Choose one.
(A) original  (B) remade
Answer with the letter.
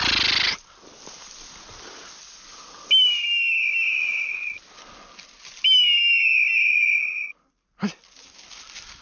A